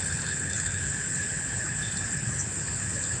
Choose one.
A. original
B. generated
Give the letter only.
B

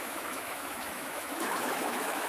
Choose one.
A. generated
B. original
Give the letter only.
A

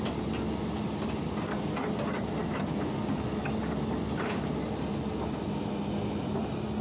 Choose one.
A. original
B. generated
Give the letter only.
A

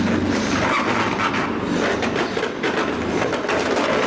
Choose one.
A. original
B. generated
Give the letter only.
A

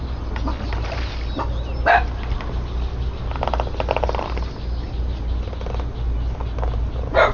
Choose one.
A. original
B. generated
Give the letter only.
A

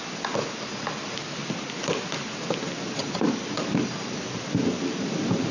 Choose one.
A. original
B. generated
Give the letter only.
A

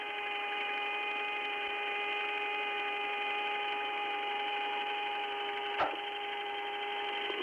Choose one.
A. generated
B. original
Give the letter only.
B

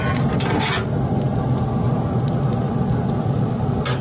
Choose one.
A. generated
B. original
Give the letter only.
B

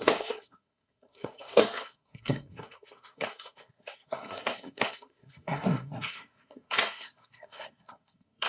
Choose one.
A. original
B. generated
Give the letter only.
B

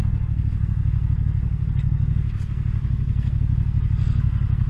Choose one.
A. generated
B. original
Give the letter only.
A